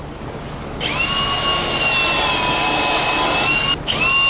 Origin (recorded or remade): recorded